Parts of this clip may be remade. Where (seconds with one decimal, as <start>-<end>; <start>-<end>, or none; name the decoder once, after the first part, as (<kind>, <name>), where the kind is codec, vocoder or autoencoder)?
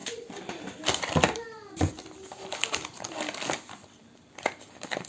4.0-5.1 (vocoder, BigVGAN v2)